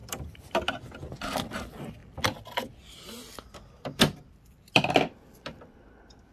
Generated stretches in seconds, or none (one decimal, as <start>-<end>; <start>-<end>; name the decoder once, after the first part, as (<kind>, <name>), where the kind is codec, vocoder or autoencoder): none